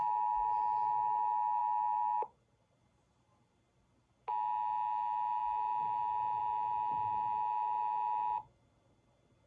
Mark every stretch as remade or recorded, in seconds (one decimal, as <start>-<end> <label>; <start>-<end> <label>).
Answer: 0.0-9.5 recorded